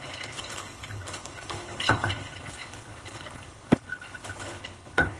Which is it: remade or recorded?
remade